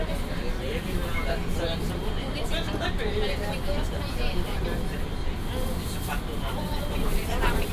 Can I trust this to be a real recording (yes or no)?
no